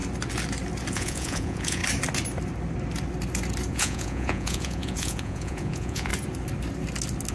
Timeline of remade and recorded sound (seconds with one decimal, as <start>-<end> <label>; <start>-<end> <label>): 0.0-0.9 recorded; 0.9-1.8 remade; 1.8-3.7 recorded; 3.7-6.1 remade; 6.1-7.3 recorded